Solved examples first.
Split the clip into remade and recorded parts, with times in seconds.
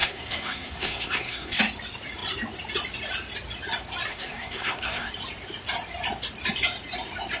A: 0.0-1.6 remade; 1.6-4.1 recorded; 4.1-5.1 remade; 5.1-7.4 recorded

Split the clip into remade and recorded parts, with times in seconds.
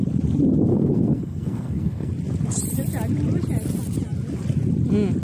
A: 0.0-0.7 recorded; 0.7-2.1 remade; 2.1-5.2 recorded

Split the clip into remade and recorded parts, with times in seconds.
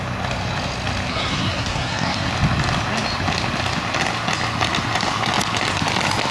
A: 0.0-1.1 recorded; 1.1-2.3 remade; 2.3-6.3 recorded